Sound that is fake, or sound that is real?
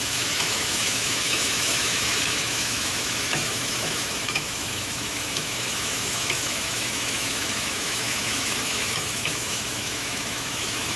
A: fake